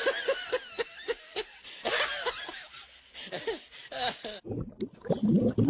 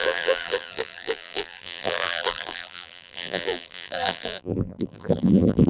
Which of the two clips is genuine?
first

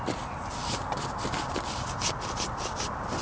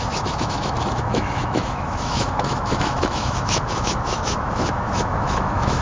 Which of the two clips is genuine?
first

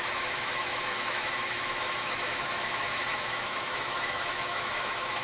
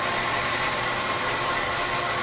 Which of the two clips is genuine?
second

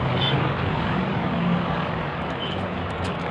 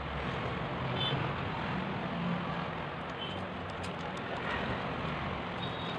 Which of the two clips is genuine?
second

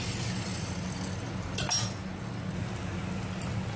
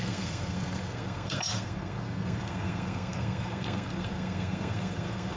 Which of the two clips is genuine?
first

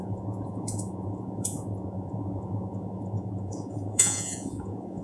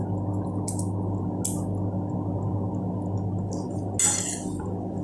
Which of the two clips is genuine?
second